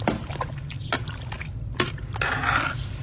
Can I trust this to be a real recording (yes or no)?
yes